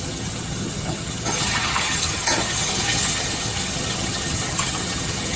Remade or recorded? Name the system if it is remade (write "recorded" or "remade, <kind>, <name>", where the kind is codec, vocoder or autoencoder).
remade, vocoder, HiFi-GAN